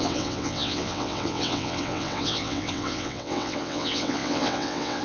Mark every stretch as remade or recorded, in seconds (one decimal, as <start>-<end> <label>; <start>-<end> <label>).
0.0-5.0 remade

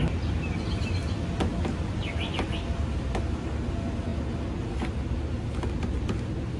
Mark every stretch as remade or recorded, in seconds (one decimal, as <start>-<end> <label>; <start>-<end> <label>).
0.0-6.6 recorded

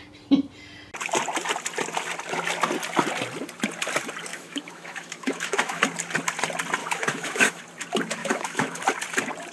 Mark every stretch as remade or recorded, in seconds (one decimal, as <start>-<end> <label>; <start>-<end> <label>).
0.0-4.3 recorded; 4.3-5.8 remade; 5.8-6.8 recorded; 6.8-7.6 remade; 7.6-8.2 recorded; 8.2-8.8 remade; 8.8-9.5 recorded